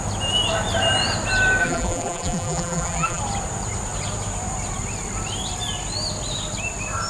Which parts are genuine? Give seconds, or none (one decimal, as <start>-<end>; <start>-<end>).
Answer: 0.0-1.6; 3.2-7.1